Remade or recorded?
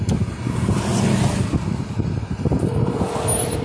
recorded